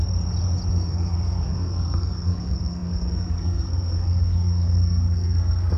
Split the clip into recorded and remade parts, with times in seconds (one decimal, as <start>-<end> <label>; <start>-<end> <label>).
0.0-0.7 recorded; 0.7-5.8 remade